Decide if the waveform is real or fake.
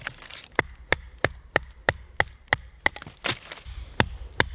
real